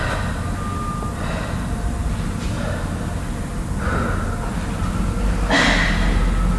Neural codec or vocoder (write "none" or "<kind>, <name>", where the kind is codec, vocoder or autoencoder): none